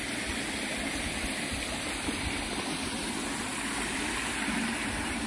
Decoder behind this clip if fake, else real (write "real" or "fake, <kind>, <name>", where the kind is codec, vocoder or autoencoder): real